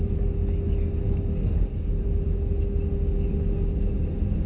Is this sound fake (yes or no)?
no